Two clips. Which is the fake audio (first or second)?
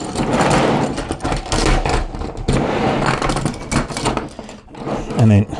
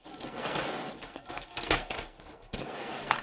second